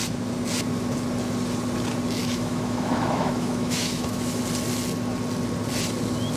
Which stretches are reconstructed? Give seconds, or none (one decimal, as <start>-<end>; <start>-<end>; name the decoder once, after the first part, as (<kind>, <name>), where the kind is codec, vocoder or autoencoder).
2.2-4.4 (autoencoder, DAC-VAE)